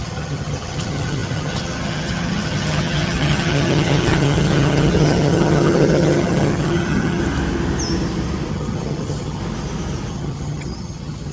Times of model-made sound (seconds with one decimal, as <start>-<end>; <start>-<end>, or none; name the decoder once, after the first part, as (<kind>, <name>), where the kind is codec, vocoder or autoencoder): 0.0-7.2 (vocoder, HiFi-GAN); 8.5-9.4; 10.1-11.3